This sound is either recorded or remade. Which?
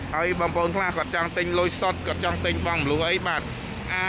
recorded